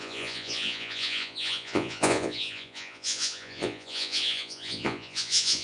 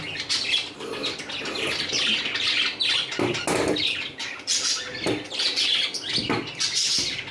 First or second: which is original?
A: second